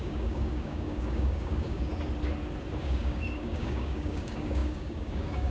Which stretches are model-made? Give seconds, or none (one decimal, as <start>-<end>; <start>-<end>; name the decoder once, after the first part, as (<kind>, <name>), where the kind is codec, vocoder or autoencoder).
0.0-1.9 (codec, DAC); 2.8-5.5